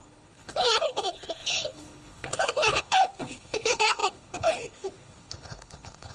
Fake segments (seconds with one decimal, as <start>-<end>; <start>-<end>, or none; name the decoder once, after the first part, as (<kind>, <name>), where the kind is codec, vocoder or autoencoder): 0.0-6.1 (codec, HILCodec)